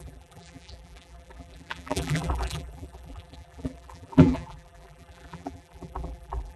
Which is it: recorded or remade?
remade